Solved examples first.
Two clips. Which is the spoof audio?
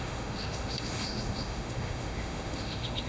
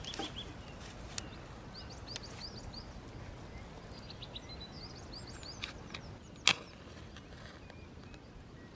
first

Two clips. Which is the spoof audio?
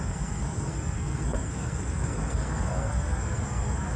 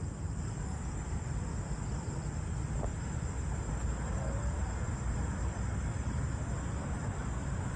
first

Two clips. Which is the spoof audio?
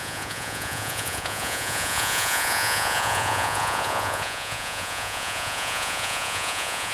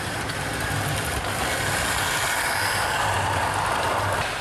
first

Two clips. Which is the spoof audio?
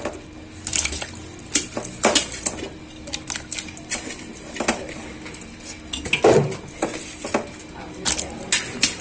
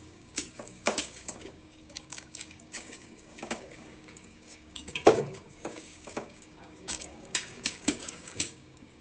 second